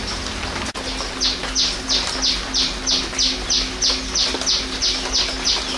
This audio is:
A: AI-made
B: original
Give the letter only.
B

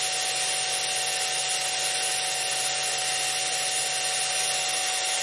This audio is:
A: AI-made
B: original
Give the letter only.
B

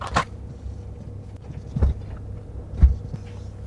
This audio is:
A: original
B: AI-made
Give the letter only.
A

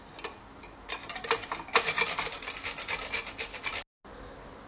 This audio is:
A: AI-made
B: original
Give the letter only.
B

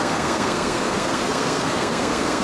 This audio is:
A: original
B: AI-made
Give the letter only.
B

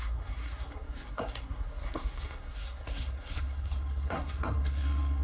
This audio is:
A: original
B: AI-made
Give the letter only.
B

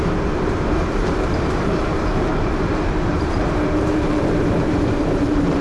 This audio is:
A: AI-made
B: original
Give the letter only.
A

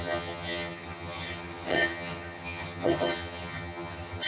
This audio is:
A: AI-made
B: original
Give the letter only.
A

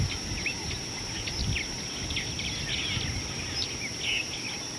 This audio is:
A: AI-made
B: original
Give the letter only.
B